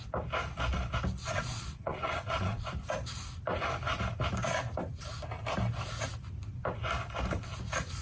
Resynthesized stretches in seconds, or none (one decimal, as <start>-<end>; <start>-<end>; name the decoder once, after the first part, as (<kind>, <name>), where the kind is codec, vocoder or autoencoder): 1.2-2.7 (vocoder, Vocos)